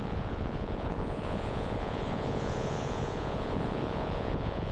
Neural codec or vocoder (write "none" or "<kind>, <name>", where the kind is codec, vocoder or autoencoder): vocoder, Vocos